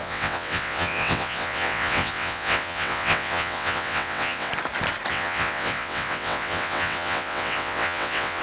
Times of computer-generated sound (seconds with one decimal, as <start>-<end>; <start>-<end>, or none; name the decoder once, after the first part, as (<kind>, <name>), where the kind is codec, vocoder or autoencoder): 0.0-4.5 (vocoder, WaveNeXt); 5.1-8.4